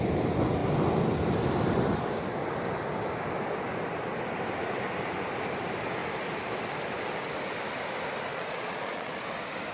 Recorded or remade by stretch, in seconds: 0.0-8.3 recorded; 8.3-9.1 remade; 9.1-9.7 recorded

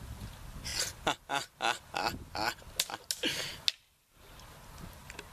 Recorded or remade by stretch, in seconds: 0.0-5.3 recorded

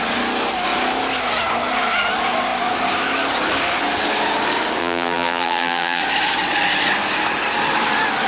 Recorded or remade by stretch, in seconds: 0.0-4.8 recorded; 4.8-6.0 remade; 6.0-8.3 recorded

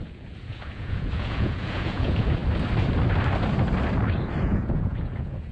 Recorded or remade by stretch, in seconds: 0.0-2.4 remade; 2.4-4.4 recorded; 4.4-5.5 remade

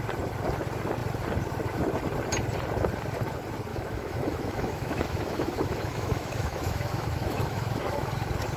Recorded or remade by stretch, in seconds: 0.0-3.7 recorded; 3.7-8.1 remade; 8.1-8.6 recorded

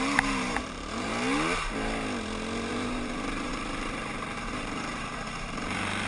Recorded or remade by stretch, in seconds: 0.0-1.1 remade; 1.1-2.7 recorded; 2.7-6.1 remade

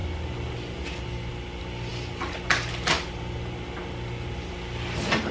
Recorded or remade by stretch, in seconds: 0.0-5.3 recorded